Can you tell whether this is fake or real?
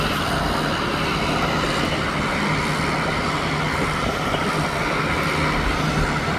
real